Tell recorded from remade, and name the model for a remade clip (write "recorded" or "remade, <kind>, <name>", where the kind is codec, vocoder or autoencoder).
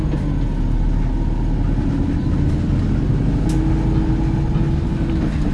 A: recorded